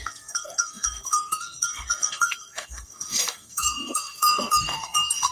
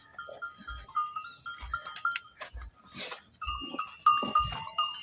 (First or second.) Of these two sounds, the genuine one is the second